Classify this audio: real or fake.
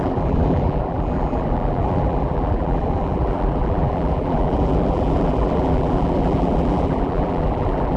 fake